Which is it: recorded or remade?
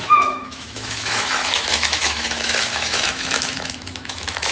remade